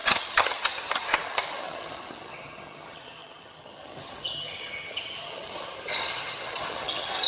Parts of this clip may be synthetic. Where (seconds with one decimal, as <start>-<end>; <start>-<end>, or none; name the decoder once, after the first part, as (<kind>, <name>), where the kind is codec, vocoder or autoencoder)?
0.0-7.3 (vocoder, HiFi-GAN)